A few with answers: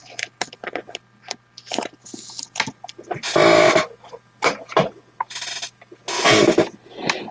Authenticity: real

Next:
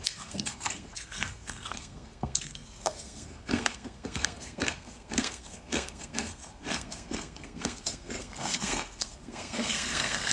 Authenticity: fake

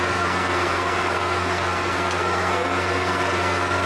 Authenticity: fake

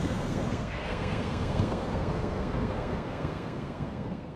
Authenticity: fake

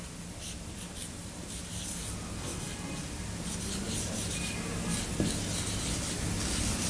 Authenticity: real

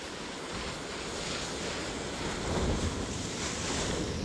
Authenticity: real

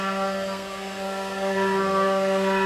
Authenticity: fake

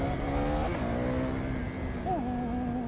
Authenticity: real